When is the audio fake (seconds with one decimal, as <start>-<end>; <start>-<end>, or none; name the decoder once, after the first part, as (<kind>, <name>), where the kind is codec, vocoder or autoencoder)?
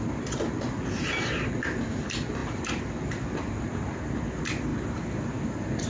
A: none